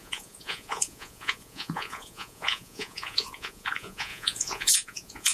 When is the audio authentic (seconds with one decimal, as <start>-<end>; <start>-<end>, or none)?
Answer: none